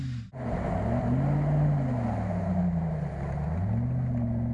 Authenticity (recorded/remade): recorded